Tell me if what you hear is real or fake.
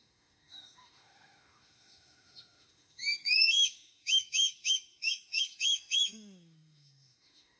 fake